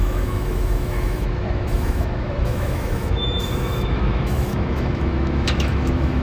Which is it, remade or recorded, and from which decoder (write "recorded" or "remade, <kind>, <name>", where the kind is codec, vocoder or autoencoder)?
remade, autoencoder, DAC-VAE